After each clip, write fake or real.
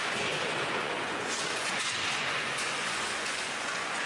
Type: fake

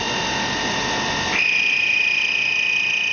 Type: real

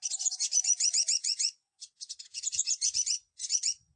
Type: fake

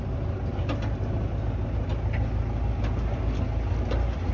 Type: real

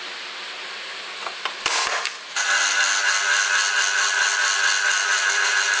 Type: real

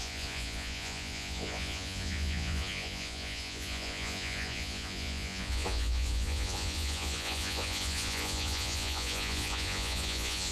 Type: fake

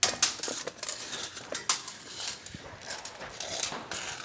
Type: real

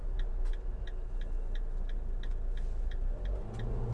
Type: real